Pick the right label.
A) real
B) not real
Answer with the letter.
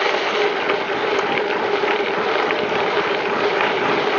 A